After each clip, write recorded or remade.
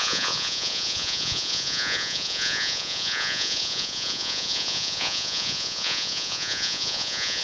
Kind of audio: remade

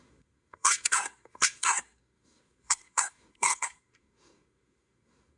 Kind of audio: remade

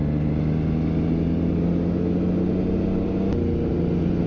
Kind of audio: recorded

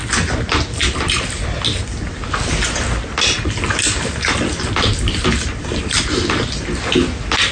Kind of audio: recorded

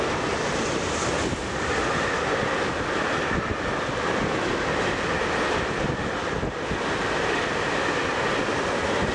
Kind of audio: recorded